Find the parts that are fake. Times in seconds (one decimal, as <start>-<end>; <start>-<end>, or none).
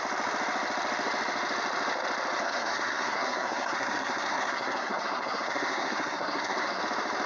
2.4-6.8